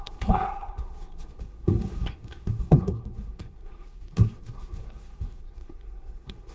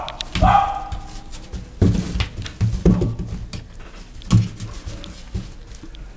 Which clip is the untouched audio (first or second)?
second